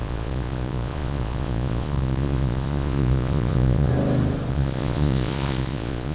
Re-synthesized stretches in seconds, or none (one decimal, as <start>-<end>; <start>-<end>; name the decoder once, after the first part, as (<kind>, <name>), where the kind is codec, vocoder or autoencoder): 0.0-3.9 (vocoder, Vocos); 4.5-6.1